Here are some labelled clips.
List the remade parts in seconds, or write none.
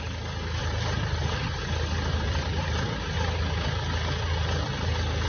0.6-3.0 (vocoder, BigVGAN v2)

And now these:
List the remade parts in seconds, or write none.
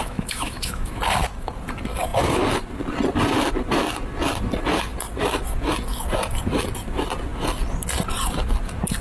0.0-1.0 (autoencoder, DAC-VAE)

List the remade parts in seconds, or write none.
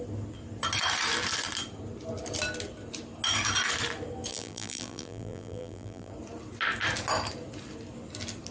4.3-6.1 (vocoder, BigVGAN v2)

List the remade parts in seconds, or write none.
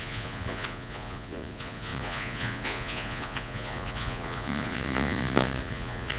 0.0-6.2 (vocoder, Vocos)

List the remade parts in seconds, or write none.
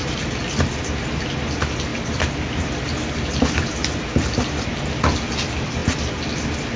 1.9-4.0 (vocoder, BigVGAN v2)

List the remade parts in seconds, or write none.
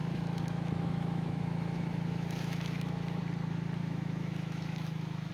0.0-3.2 (autoencoder, DAC-VAE); 3.8-5.3